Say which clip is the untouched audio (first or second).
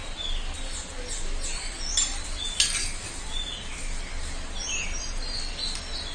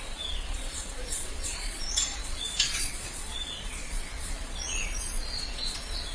first